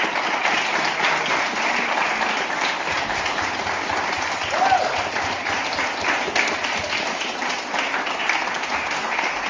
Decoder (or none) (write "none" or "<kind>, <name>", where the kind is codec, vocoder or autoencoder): none